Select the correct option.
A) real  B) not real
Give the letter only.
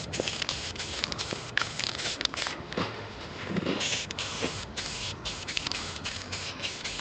B